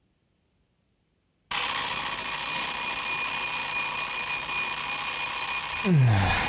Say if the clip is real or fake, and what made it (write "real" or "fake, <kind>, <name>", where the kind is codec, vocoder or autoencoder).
real